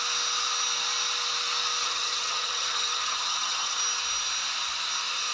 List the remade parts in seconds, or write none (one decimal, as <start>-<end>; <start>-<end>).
1.8-3.8

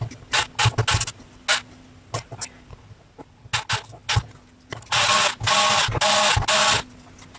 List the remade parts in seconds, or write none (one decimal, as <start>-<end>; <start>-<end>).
none

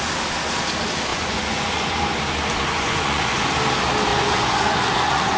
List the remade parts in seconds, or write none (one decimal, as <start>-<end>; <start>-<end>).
1.1-2.0; 2.7-3.5; 4.1-5.4

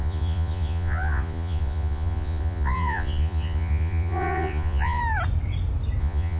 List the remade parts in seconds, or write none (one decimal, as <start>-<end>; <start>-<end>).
0.0-5.0; 6.0-6.4

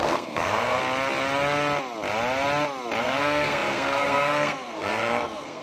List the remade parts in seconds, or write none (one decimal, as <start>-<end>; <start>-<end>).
0.0-0.8; 3.0-5.6

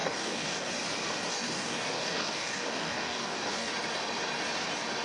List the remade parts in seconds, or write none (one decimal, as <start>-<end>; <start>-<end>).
0.0-0.7; 1.3-3.7